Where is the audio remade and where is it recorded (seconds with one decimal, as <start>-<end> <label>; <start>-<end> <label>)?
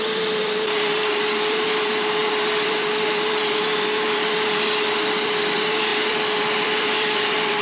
0.0-7.6 remade